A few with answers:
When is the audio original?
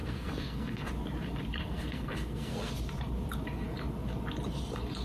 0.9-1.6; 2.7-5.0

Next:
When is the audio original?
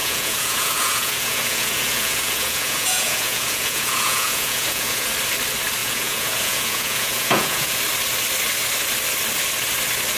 5.1-5.8; 7.8-10.2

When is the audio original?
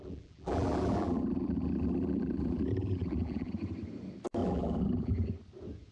3.5-4.4; 5.1-5.9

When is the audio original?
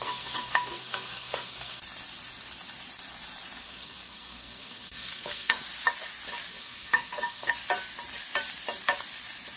1.8-3.6; 5.6-6.5; 7.5-9.6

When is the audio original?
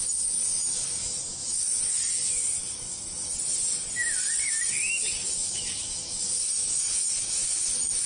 2.0-2.6; 3.3-4.7